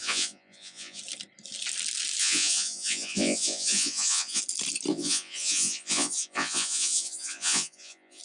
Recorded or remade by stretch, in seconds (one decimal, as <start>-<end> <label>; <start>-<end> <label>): 0.0-1.0 remade; 1.0-2.2 recorded; 2.2-4.4 remade; 4.4-4.9 recorded; 4.9-8.2 remade